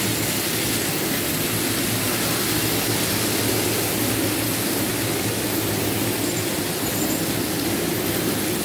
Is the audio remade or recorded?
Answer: recorded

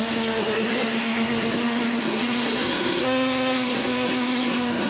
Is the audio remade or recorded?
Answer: remade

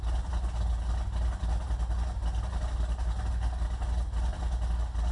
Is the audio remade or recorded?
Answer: recorded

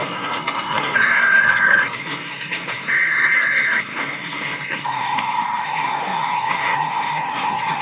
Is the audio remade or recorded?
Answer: remade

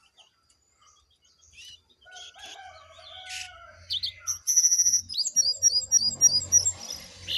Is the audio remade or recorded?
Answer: recorded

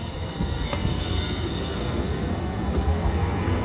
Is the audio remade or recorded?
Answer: remade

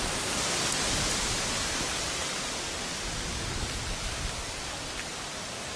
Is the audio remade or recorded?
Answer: recorded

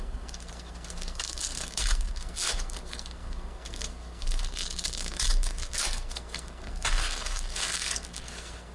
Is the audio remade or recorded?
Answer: remade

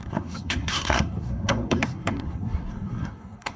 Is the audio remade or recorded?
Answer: remade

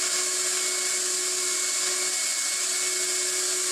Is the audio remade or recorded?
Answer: recorded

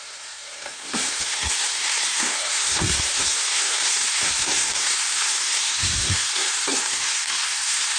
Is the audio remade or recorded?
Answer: remade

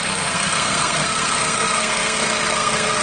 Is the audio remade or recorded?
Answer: remade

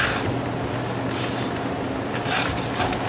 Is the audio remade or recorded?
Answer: recorded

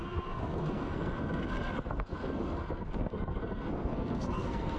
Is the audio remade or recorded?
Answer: remade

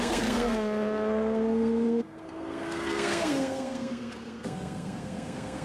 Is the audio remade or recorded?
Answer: remade